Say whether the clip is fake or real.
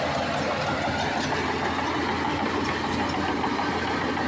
real